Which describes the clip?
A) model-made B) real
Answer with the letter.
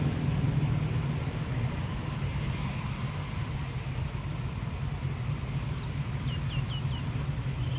B